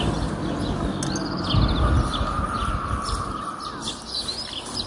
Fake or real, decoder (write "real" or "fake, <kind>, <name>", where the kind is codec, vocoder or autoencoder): real